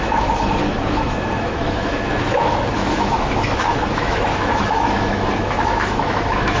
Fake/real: fake